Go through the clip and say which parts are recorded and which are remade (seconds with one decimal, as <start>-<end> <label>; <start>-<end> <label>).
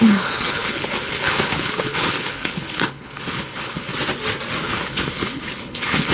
0.0-3.9 remade; 3.9-4.6 recorded; 4.6-6.1 remade